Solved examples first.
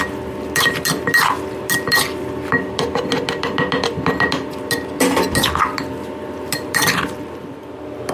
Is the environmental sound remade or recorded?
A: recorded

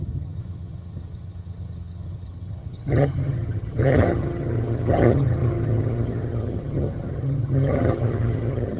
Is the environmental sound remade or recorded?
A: remade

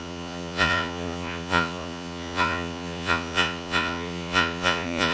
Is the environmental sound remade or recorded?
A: remade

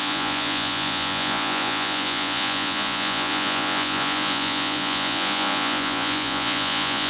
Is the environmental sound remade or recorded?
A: remade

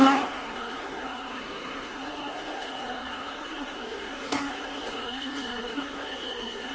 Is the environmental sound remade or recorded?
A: remade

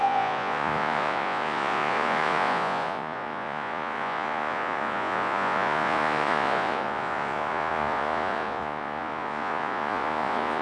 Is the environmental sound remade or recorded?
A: remade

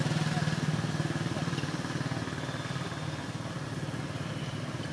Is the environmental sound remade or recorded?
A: recorded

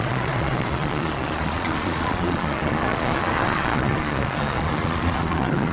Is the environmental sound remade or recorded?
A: remade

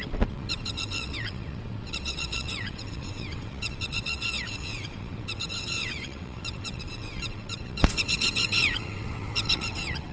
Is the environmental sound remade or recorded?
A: remade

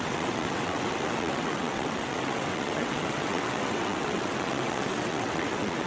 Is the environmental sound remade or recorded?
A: remade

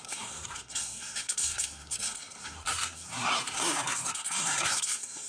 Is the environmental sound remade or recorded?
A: remade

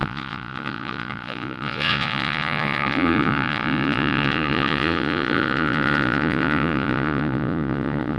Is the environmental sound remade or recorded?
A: remade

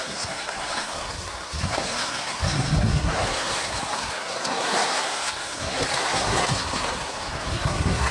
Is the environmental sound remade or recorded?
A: remade